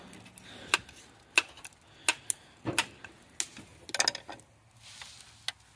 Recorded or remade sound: recorded